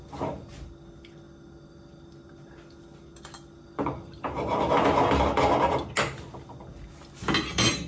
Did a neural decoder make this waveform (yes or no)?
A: no